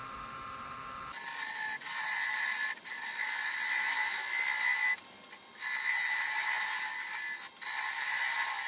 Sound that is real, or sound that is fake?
real